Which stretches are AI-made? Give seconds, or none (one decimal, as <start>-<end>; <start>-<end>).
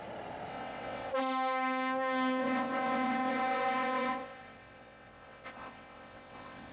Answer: 0.5-1.1; 2.4-6.7